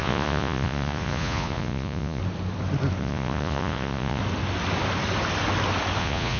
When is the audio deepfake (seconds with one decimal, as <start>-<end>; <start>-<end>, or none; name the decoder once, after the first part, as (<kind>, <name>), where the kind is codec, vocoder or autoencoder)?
0.0-2.2 (vocoder, Vocos); 3.0-4.2; 6.0-6.4

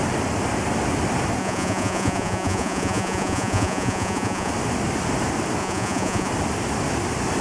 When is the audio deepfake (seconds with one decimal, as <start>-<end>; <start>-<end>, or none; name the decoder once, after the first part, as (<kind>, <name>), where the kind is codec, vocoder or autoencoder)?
1.4-4.5 (vocoder, Vocos); 5.6-6.3

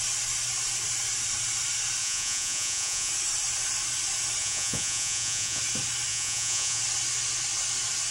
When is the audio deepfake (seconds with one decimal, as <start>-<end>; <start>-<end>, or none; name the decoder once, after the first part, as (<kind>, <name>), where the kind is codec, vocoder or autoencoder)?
2.0-3.1 (vocoder, Vocos); 4.4-5.6; 6.1-6.8

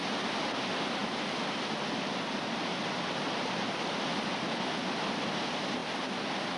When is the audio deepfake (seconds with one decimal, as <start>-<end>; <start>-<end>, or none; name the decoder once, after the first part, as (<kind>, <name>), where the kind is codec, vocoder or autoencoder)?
none

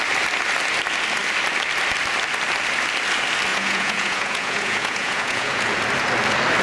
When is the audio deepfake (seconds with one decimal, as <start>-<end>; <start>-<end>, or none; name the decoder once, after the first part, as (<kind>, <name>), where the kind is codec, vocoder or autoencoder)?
3.5-5.7 (vocoder, Vocos)